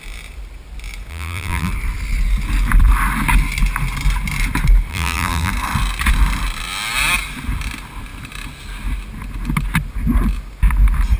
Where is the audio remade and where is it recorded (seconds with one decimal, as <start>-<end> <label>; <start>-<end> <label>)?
0.0-1.1 recorded; 1.1-1.7 remade; 1.7-4.9 recorded; 4.9-5.5 remade; 5.5-11.2 recorded